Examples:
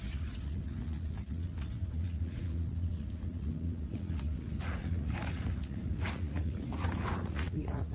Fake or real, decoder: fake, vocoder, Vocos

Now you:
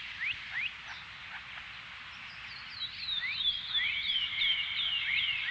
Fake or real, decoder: real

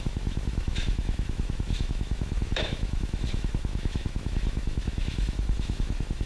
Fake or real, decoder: fake, autoencoder, DAC-VAE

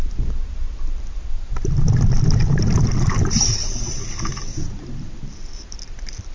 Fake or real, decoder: real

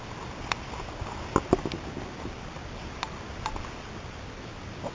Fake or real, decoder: real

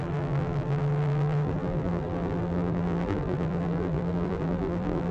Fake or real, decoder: fake, vocoder, BigVGAN v2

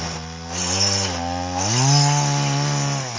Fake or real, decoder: real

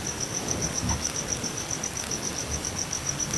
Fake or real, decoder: fake, codec, DAC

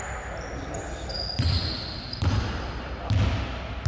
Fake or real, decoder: real